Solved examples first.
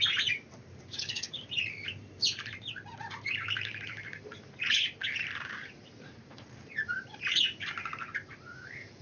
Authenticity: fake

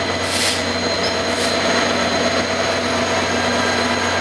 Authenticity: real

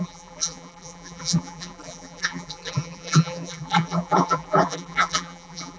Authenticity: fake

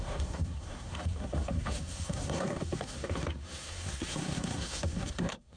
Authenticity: fake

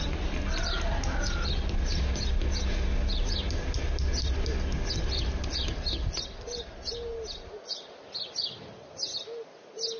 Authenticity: real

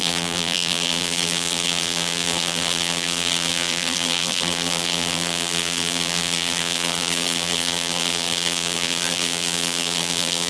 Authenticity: fake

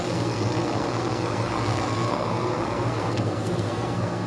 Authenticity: fake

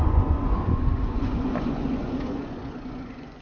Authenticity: fake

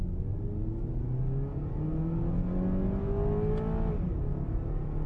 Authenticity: real